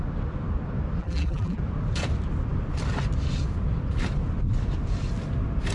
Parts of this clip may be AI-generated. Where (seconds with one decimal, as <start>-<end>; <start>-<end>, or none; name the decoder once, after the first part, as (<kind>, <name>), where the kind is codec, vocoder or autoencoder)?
1.0-1.6 (vocoder, BigVGAN v2)